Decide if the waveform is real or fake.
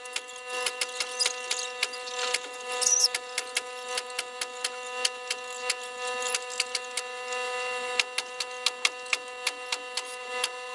real